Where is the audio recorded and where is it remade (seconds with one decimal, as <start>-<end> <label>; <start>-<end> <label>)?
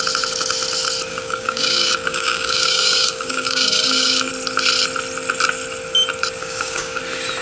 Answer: 0.0-1.1 recorded; 1.1-4.3 remade; 4.3-6.4 recorded; 6.4-7.0 remade; 7.0-7.4 recorded